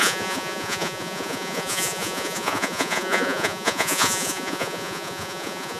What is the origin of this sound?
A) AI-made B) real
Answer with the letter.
A